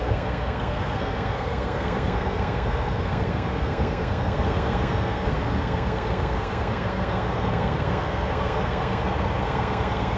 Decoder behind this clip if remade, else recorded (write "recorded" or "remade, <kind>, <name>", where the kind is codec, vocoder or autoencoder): remade, codec, SNAC